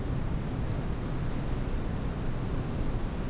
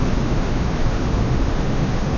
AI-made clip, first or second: second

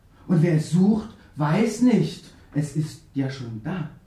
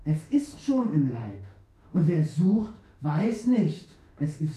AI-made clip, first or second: second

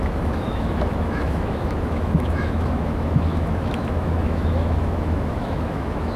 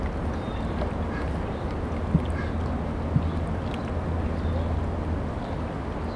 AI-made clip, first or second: first